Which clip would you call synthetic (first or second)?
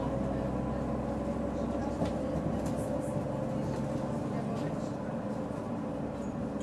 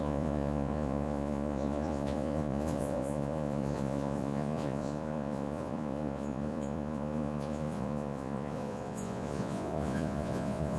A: second